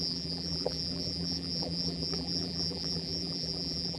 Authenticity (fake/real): fake